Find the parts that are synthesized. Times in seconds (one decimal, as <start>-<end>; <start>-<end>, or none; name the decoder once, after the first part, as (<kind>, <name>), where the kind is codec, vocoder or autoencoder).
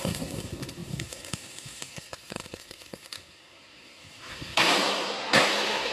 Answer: 0.0-5.9 (codec, SNAC)